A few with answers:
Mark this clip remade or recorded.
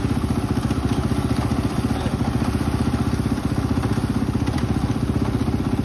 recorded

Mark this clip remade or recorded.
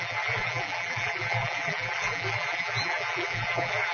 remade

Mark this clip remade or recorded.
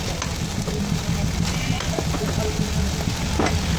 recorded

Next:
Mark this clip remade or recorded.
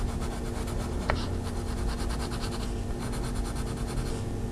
recorded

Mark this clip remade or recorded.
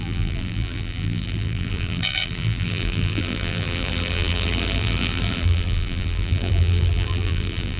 remade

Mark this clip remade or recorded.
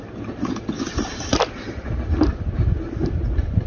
recorded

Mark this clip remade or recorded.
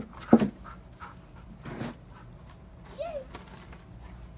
recorded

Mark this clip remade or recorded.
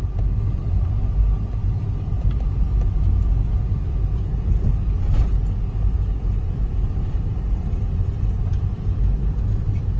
recorded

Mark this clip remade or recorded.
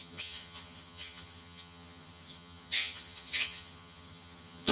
remade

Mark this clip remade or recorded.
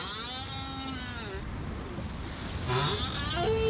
recorded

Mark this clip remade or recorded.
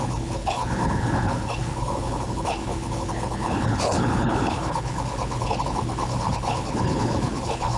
remade